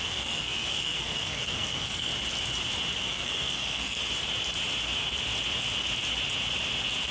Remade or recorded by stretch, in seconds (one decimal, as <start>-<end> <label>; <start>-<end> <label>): 0.0-2.1 remade; 2.1-3.0 recorded; 3.0-4.0 remade; 4.0-7.1 recorded